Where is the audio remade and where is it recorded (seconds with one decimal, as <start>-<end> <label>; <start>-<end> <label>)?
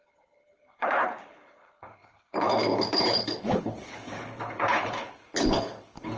0.0-6.2 remade